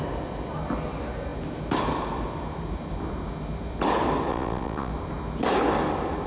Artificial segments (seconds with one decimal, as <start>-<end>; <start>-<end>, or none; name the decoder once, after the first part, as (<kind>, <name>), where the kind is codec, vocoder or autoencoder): 4.3-4.9 (vocoder, Vocos)